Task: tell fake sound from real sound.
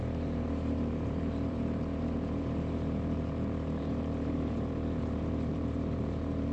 fake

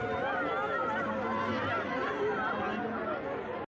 real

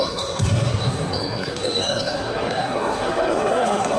fake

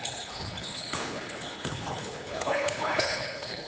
fake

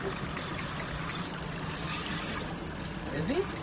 real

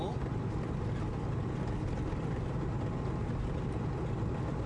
real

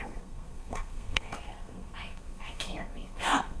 fake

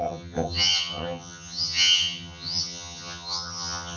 fake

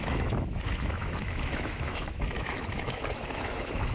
fake